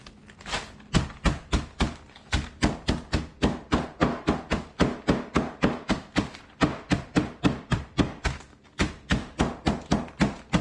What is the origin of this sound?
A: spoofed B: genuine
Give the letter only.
B